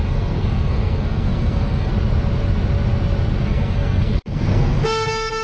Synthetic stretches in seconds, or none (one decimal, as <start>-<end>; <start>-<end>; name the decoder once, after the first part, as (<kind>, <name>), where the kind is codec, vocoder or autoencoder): 0.0-1.9 (codec, SNAC); 3.4-5.4